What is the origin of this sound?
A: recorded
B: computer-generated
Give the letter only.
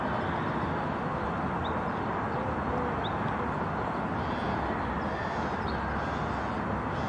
A